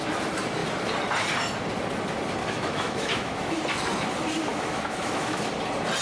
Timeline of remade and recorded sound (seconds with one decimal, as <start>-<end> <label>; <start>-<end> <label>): 0.0-2.4 recorded; 2.4-3.6 remade; 3.6-4.5 recorded; 4.5-5.5 remade; 5.5-6.0 recorded